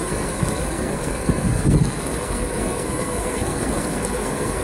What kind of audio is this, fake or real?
fake